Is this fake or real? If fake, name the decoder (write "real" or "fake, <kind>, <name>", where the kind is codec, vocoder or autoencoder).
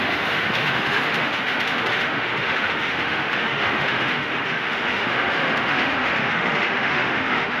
fake, autoencoder, DAC-VAE